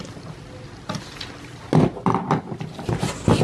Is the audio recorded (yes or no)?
yes